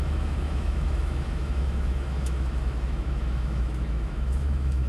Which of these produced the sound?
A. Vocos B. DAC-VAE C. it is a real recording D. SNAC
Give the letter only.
B